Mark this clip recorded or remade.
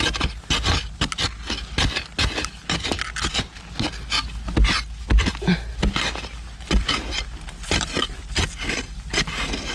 recorded